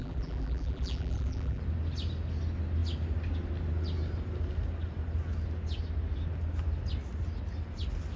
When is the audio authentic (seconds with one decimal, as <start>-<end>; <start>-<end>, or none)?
1.6-8.2